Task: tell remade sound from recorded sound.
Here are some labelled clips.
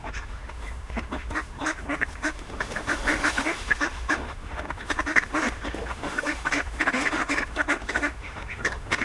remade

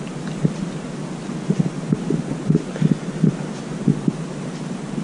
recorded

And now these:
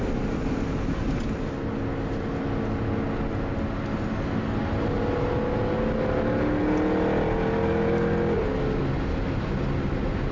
recorded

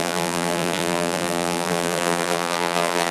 remade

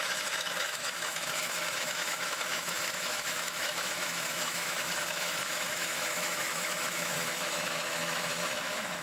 remade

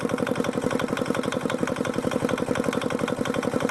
remade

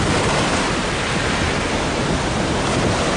recorded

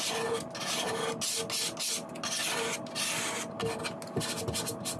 recorded